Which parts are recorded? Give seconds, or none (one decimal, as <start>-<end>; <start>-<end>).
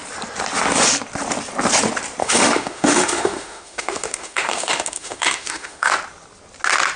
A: 0.0-2.2; 5.9-7.0